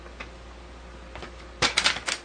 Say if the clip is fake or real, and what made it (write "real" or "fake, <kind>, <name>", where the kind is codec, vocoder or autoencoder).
real